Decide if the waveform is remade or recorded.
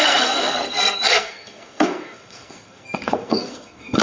remade